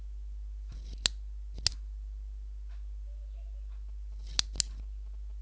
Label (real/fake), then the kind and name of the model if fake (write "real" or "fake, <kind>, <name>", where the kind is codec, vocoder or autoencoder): real